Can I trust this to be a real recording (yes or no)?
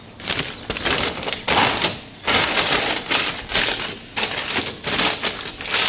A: yes